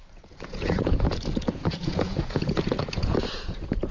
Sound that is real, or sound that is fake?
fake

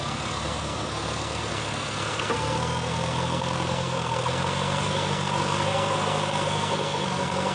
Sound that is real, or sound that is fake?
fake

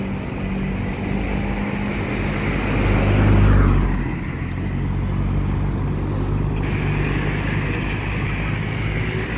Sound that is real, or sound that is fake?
real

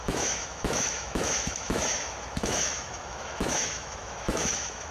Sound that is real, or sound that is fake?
fake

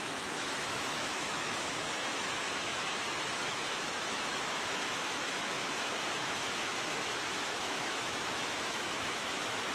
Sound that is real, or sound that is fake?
fake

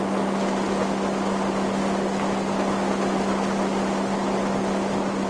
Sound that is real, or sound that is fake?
real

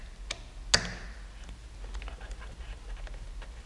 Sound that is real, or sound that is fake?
real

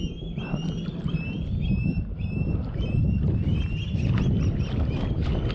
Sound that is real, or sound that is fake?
real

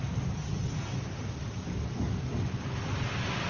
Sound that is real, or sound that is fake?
real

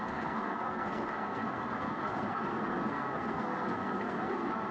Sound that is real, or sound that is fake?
fake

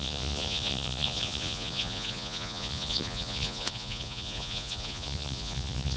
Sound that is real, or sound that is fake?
fake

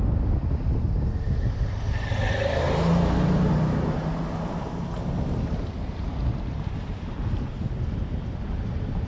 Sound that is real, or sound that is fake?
real